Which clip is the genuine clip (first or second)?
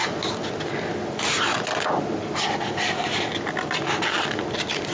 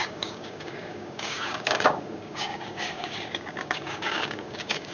first